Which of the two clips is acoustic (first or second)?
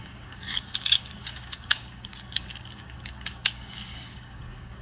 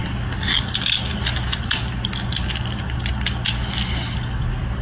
second